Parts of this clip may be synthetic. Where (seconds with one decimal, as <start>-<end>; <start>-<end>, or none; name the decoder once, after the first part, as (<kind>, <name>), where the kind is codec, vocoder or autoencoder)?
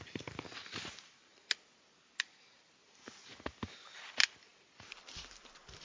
none